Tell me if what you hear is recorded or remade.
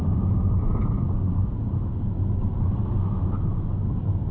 recorded